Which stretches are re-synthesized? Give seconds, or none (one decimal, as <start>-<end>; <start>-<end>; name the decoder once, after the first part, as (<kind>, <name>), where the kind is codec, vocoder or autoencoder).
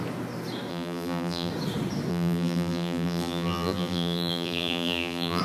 0.7-1.5 (vocoder, BigVGAN v2); 2.1-5.4